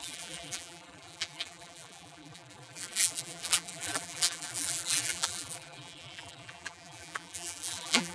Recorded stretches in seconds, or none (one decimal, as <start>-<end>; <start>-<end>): none